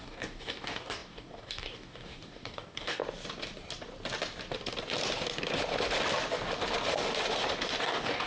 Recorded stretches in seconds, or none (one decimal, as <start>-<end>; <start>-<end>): 3.0-7.8